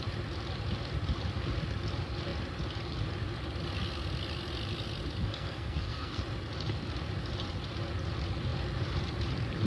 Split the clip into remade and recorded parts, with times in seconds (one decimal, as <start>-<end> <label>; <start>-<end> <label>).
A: 0.0-5.2 recorded; 5.2-6.2 remade; 6.2-9.7 recorded